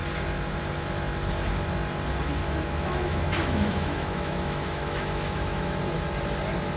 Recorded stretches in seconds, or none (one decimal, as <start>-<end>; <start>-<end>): 0.0-2.4; 5.8-6.8